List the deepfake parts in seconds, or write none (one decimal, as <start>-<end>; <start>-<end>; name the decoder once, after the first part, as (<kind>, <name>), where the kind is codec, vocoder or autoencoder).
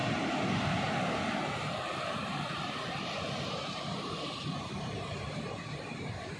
0.0-6.4 (vocoder, BigVGAN v2)